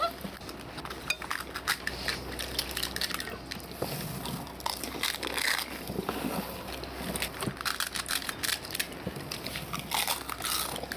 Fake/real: real